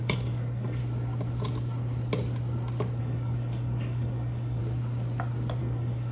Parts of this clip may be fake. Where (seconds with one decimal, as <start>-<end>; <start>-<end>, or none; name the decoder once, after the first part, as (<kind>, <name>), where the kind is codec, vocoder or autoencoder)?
0.0-0.8 (codec, DAC); 3.0-4.6; 5.6-6.1